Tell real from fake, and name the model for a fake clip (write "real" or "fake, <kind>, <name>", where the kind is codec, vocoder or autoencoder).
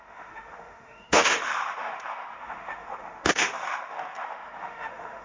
fake, autoencoder, DAC-VAE